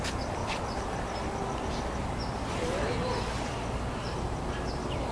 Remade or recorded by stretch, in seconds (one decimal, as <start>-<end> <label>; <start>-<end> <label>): 0.0-5.1 recorded